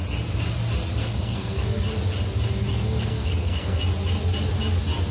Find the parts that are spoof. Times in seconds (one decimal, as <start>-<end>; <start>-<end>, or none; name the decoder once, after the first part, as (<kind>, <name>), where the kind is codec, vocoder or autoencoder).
1.0-1.8 (codec, SNAC); 2.7-3.8